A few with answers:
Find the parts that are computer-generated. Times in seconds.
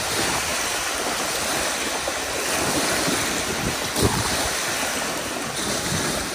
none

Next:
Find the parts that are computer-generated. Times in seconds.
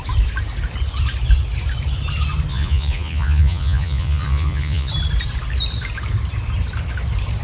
2.5-4.9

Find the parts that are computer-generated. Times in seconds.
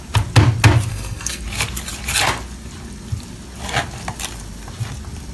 0.9-1.4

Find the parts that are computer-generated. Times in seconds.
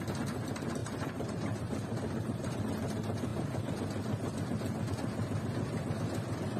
0.8-2.6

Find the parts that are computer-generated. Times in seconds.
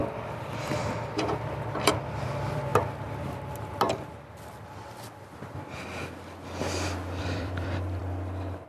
1.4-2.7; 7.2-8.0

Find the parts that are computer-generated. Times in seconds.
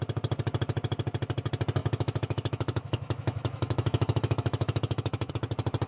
1.8-5.3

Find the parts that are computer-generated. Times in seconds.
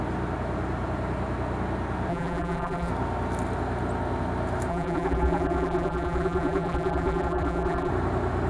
2.1-2.9; 4.7-7.9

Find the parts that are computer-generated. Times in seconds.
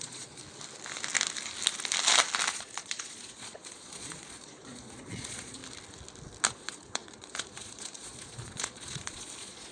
0.0-0.4; 2.5-5.6; 6.5-9.7